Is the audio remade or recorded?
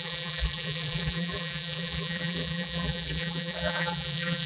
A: remade